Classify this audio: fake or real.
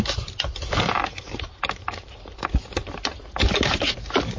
real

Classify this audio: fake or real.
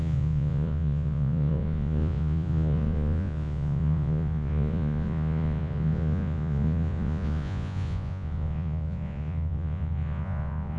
fake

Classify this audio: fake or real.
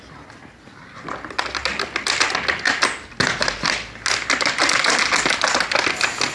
real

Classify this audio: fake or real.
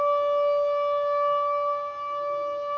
real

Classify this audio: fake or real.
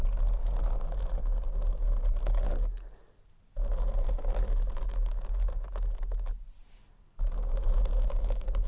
real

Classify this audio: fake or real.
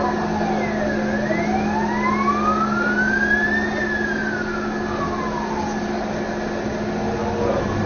real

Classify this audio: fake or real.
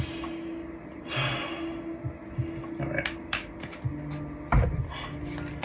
real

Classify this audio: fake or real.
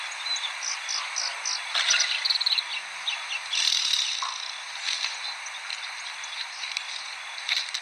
real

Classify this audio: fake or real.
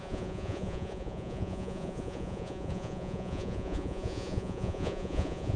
fake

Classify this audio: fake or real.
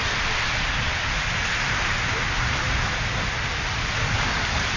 real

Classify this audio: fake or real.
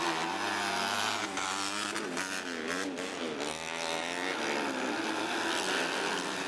real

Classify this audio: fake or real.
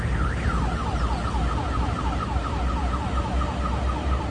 real